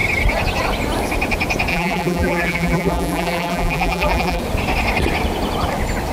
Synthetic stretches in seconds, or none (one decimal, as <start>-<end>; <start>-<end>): 1.7-4.4

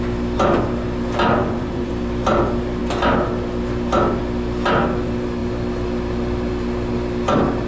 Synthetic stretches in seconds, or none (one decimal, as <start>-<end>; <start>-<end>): 1.4-1.9

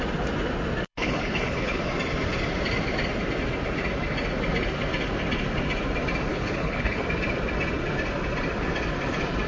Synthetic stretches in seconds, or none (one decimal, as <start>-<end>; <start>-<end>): 0.9-1.8; 6.3-7.0

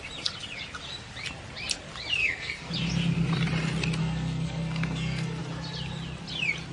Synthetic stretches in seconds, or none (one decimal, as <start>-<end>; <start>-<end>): 2.2-2.7; 4.0-5.4

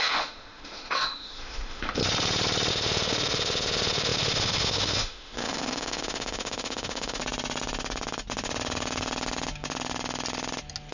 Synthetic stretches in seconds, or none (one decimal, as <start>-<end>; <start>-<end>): 0.0-2.0; 2.7-7.2